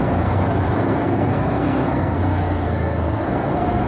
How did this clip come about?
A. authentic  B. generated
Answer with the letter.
B